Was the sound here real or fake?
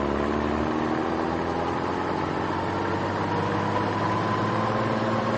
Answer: real